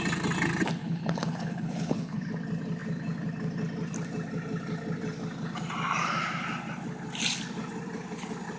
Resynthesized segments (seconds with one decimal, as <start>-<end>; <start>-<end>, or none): 0.8-2.2